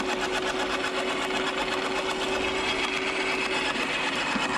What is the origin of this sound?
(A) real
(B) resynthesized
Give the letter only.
A